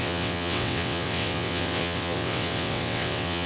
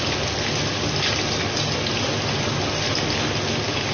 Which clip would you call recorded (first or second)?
second